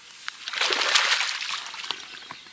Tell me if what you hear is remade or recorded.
recorded